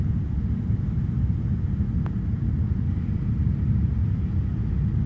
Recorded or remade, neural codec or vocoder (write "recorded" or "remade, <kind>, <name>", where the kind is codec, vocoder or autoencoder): recorded